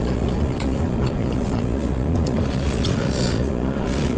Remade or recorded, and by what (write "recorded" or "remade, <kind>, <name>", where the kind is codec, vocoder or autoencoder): remade, vocoder, Vocos